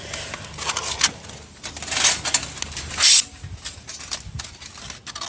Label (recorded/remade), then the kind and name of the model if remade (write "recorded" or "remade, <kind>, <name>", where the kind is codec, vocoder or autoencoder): recorded